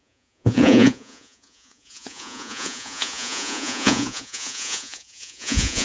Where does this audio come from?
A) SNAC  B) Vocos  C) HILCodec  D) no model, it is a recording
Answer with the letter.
B